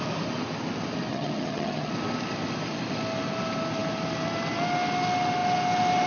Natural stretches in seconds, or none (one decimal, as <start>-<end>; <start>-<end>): 0.0-1.1; 1.9-6.1